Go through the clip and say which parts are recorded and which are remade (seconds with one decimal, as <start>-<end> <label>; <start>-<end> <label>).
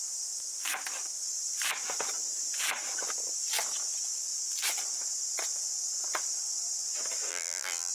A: 0.0-7.3 recorded; 7.3-7.9 remade